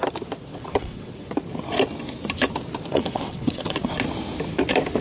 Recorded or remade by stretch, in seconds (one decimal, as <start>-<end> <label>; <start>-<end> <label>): 0.0-0.5 recorded; 0.5-1.3 remade; 1.3-2.9 recorded; 2.9-3.9 remade; 3.9-5.0 recorded